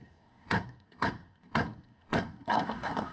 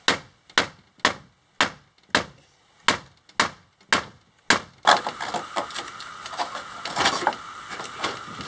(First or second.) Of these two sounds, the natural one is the second